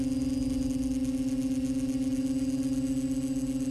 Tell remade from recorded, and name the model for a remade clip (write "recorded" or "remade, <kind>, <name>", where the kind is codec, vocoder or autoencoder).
recorded